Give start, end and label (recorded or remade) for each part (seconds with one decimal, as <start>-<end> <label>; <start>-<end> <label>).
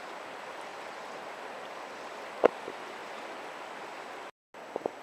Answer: 0.0-0.7 recorded; 0.7-1.7 remade; 1.7-5.0 recorded